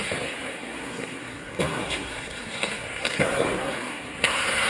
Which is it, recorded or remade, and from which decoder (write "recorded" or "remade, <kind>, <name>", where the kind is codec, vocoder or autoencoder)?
remade, codec, SNAC